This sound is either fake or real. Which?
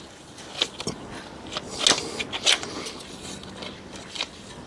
real